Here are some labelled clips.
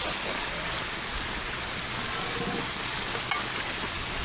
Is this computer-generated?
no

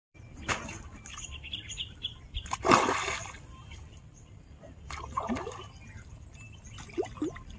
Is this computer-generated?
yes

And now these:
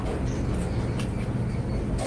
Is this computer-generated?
no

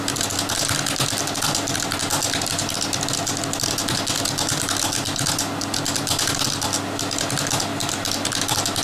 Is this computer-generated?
no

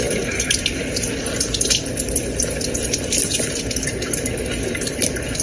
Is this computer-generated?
no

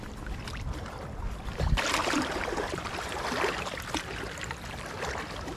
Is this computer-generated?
no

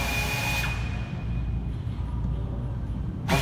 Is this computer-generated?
no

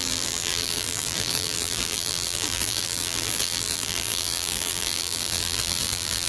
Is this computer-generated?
yes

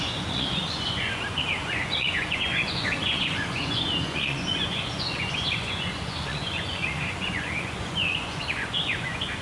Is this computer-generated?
yes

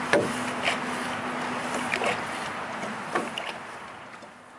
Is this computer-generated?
no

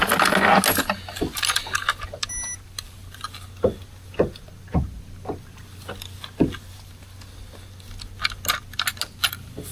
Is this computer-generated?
no